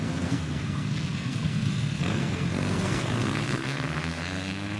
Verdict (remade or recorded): remade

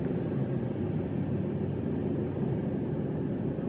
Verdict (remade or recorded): recorded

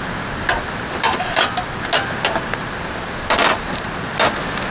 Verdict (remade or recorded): recorded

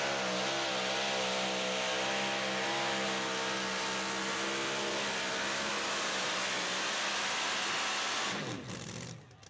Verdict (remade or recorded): recorded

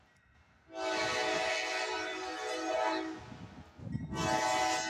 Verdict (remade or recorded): recorded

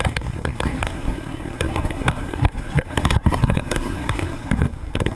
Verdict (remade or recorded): remade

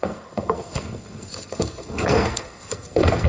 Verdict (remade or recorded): remade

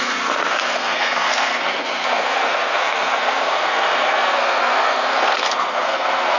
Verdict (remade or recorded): remade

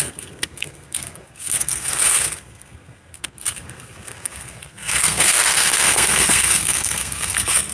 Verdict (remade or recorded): remade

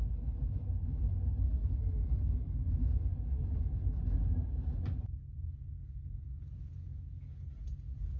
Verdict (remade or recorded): recorded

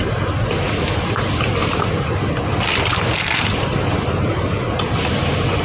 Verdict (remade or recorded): recorded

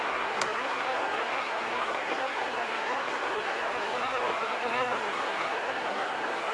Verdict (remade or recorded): remade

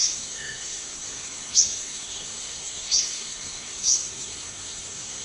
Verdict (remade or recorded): remade